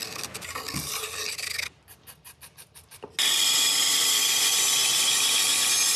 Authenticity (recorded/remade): recorded